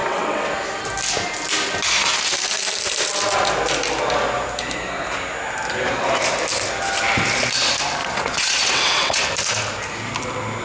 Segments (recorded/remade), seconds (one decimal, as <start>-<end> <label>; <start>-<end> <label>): 0.0-0.5 remade; 0.5-8.0 recorded; 8.0-9.2 remade; 9.2-10.6 recorded